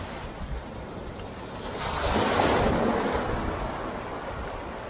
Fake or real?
real